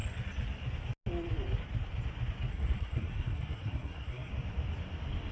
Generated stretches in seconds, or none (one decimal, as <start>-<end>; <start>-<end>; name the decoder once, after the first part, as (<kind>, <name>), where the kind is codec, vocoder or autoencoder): 2.5-4.3 (codec, SNAC)